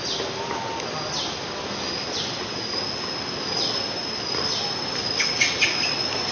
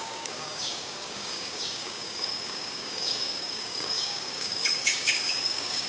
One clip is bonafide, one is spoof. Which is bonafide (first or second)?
first